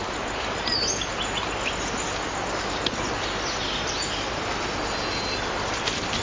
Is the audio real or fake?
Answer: real